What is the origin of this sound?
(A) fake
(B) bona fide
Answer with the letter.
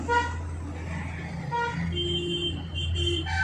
B